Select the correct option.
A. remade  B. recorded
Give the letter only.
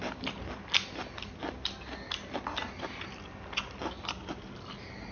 B